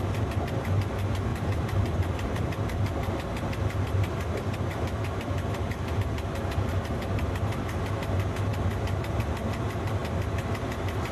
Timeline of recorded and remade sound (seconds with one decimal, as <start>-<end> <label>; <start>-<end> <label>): 0.0-1.3 recorded; 1.3-5.9 remade; 5.9-11.1 recorded